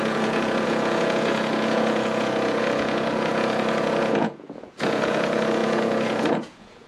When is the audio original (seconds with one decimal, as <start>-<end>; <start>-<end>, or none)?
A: none